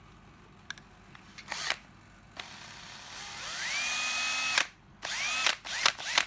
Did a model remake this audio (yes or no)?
no